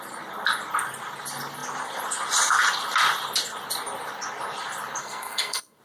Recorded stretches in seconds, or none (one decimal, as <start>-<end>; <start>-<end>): 0.0-5.0